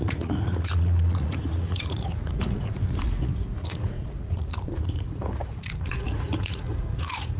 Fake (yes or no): yes